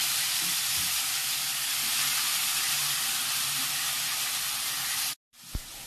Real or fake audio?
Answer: real